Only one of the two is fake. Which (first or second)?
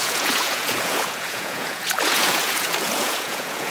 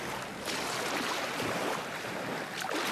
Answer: first